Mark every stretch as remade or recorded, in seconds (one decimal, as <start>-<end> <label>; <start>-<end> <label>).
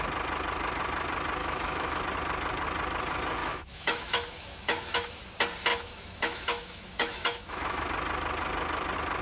0.0-1.4 recorded; 1.4-2.0 remade; 2.0-3.4 recorded; 3.4-5.2 remade; 5.2-5.7 recorded; 5.7-7.8 remade; 7.8-9.2 recorded